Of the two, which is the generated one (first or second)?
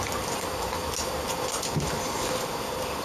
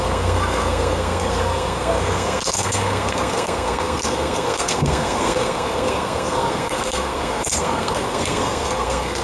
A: second